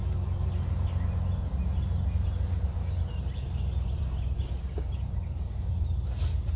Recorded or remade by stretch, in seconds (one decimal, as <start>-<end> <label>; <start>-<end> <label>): 0.0-6.6 recorded